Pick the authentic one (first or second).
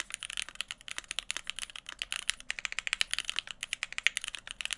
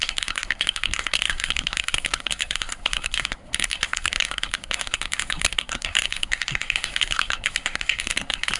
first